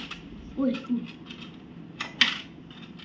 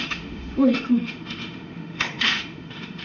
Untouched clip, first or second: first